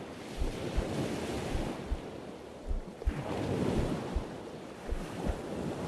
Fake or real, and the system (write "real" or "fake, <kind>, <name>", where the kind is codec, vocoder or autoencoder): real